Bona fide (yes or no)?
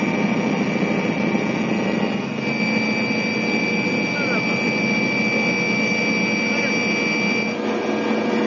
yes